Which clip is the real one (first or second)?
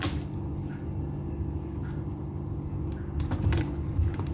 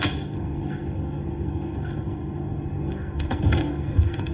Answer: first